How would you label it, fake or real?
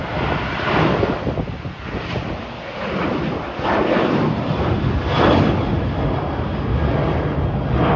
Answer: real